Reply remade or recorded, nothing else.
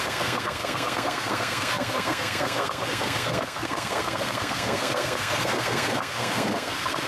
remade